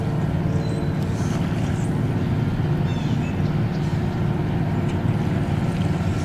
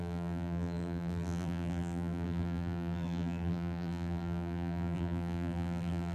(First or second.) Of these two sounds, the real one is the first